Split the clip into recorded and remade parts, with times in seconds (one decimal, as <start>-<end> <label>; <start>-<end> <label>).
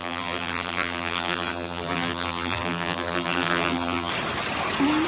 0.0-4.1 remade; 4.1-5.1 recorded